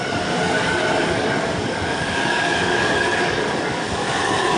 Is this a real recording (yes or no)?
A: no